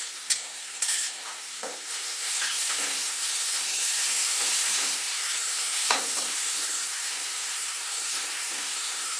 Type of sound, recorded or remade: remade